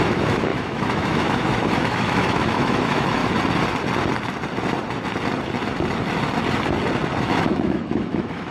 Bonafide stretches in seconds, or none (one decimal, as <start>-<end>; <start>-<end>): 3.2-7.2